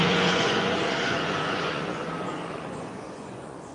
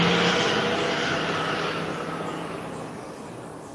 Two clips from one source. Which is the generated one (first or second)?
first